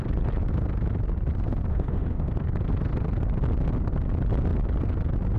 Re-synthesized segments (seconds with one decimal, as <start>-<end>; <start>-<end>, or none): 1.7-2.3